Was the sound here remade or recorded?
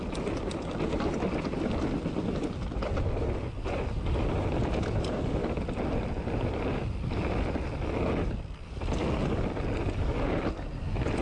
recorded